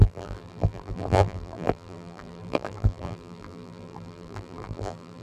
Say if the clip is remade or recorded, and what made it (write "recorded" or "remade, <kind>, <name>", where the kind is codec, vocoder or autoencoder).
remade, vocoder, BigVGAN v2